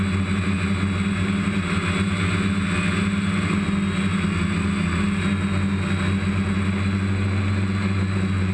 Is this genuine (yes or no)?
yes